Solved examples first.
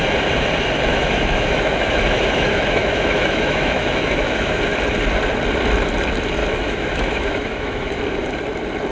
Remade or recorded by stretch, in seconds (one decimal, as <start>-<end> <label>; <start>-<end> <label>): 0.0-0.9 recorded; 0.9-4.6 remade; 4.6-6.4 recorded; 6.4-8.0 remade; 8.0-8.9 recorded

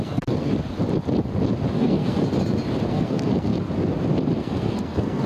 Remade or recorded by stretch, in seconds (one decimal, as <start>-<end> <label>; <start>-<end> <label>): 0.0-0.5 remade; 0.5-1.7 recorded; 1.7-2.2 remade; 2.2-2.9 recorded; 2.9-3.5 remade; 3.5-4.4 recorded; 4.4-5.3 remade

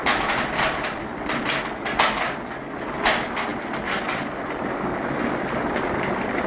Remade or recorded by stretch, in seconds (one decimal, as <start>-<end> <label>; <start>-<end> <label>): 0.0-6.5 recorded

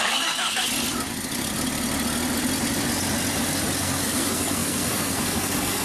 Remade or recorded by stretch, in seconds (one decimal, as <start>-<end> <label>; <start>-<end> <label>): 0.0-0.7 remade; 0.7-3.8 recorded; 3.8-5.8 remade